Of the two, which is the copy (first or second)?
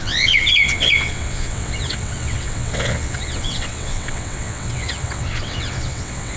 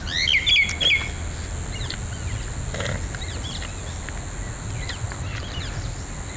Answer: first